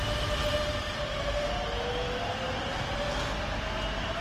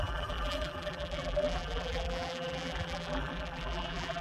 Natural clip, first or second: first